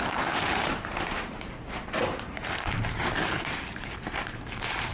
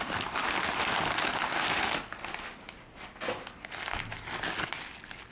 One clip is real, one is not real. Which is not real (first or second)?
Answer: first